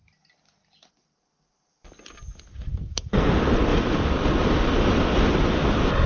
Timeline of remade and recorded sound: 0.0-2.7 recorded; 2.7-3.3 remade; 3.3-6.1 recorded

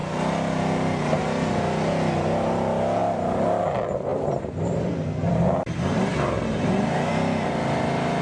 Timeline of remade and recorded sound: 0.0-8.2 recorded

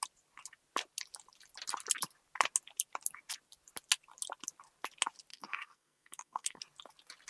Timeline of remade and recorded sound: 0.0-5.3 recorded; 5.3-6.6 remade; 6.6-7.3 recorded

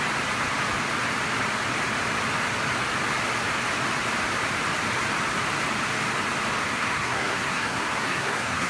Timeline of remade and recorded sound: 0.0-6.7 recorded; 6.7-8.7 remade

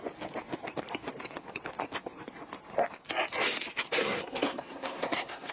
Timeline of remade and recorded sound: 0.0-4.0 recorded; 4.0-5.5 remade

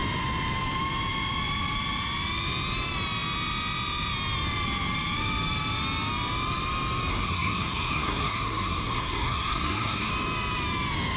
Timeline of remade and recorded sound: 0.0-7.1 recorded; 7.1-10.1 remade; 10.1-11.2 recorded

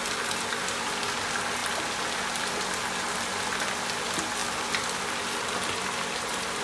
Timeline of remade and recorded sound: 0.0-6.6 recorded